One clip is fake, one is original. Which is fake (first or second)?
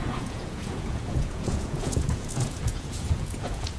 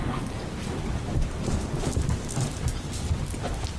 first